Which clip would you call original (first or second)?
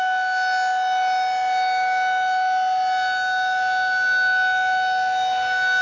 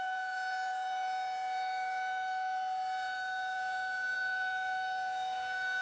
first